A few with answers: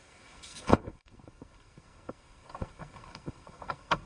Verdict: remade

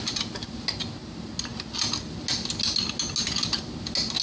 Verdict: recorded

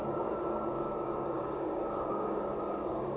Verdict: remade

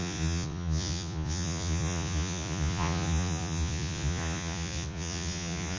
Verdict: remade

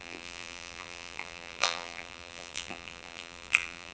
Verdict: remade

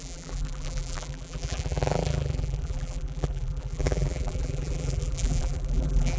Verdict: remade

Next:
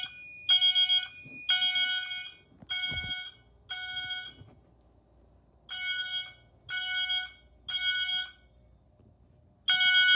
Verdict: recorded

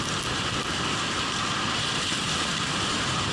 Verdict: recorded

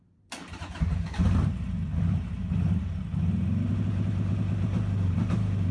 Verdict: recorded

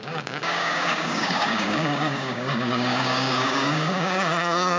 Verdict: remade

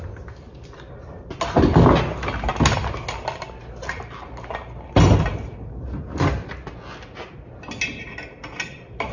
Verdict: recorded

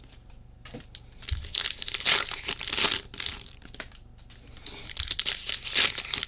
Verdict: recorded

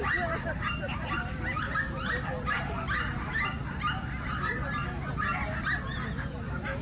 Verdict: recorded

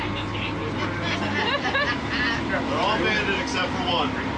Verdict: recorded